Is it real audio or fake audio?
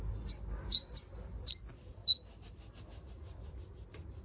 real